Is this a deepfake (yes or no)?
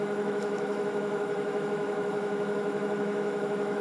yes